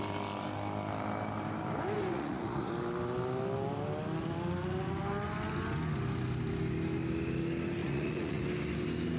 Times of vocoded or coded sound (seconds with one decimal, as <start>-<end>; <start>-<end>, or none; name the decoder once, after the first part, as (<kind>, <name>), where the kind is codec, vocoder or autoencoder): 2.1-2.7 (vocoder, Vocos); 7.8-8.4